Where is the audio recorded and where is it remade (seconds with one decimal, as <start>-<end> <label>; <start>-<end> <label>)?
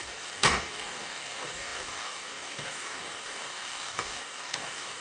0.0-5.0 remade